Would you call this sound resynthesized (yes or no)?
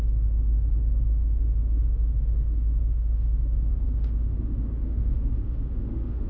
yes